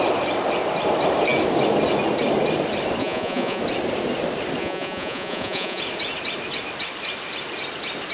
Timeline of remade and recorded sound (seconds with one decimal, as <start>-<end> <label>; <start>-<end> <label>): 0.0-3.0 recorded; 3.0-3.6 remade; 3.6-4.6 recorded; 4.6-5.8 remade; 5.8-8.1 recorded

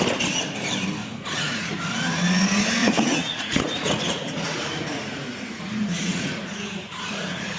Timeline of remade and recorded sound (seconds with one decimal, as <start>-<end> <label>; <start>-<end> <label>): 0.0-1.0 recorded; 1.0-1.8 remade; 1.8-2.8 recorded; 2.8-7.6 remade

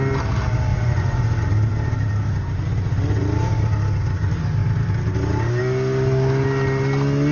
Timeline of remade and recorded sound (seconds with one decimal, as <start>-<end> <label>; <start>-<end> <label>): 0.0-0.7 recorded; 0.7-1.2 remade; 1.2-7.3 recorded

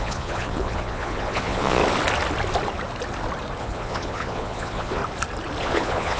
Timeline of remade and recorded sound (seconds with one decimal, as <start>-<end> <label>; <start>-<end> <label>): 0.0-1.8 remade; 1.8-3.6 recorded; 3.6-5.0 remade; 5.0-5.6 recorded; 5.6-6.2 remade

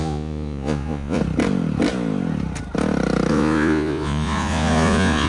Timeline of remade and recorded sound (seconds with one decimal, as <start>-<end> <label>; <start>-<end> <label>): 0.0-1.2 remade; 1.2-3.3 recorded; 3.3-5.3 remade

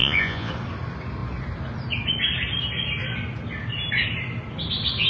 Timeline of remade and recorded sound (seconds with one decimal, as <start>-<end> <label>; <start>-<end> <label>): 0.0-0.5 remade; 0.5-5.1 recorded